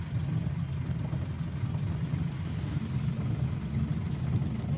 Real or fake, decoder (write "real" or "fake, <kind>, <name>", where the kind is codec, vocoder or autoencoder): real